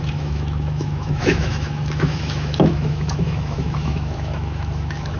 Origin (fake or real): fake